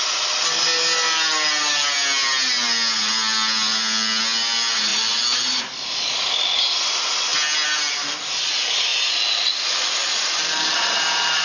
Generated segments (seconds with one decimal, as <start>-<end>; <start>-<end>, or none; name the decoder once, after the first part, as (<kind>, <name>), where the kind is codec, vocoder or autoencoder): none